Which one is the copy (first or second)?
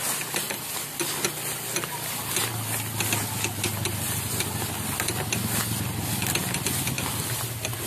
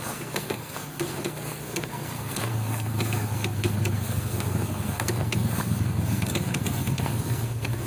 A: second